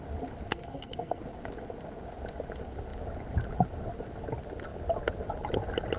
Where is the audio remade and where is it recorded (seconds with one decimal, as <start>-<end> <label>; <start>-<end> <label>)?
0.0-0.5 recorded; 0.5-1.2 remade; 1.2-6.0 recorded